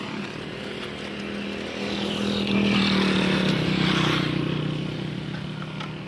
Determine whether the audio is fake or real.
real